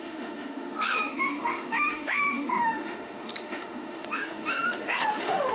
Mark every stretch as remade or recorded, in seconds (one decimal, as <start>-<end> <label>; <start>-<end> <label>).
0.0-5.5 remade